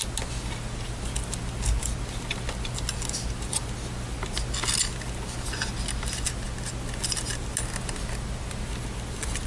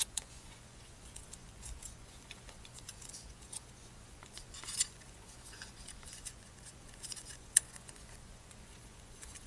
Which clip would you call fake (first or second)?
second